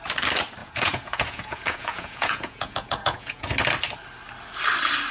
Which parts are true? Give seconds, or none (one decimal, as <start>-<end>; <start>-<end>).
0.0-0.6; 3.5-5.1